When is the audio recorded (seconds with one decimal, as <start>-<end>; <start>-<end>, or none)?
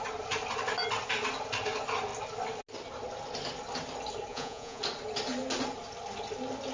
0.0-4.3; 4.8-6.7